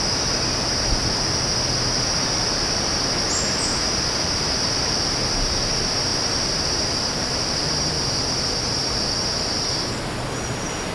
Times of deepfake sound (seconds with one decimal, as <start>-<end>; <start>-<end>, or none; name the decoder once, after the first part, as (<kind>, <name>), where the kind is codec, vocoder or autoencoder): 6.1-7.7 (vocoder, BigVGAN v2)